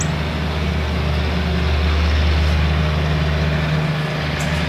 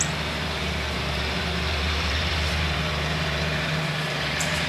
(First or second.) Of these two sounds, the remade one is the second